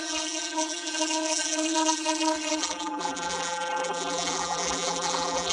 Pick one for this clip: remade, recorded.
remade